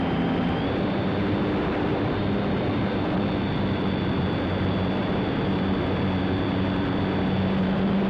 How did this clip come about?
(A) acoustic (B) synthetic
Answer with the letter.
B